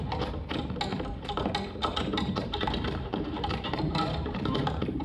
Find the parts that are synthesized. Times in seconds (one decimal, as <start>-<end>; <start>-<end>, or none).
0.9-1.5; 2.0-5.0